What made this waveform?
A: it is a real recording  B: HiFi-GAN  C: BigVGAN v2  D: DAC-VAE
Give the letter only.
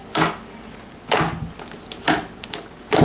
A